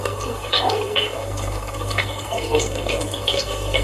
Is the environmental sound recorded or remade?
remade